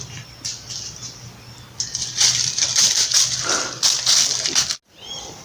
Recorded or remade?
recorded